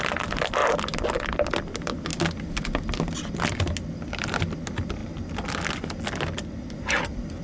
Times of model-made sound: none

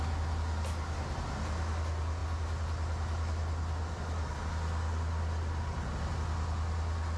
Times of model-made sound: none

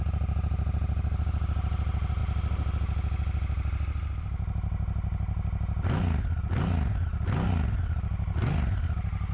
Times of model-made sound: none

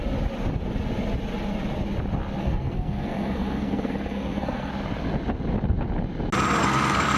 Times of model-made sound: 2.4-4.7 (codec, SNAC); 6.6-7.2

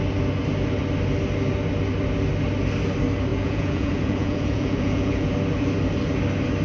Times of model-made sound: 3.3-5.3 (vocoder, Vocos)

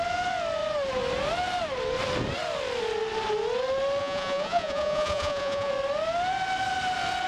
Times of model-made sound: 4.0-5.7 (vocoder, Vocos)